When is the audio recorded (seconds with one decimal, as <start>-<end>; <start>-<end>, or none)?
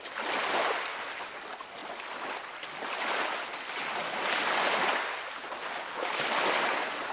0.0-7.1